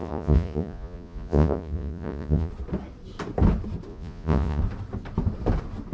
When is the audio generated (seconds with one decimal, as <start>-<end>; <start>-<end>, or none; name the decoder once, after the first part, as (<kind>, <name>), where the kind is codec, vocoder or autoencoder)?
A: 0.0-2.5 (vocoder, Vocos); 3.9-4.6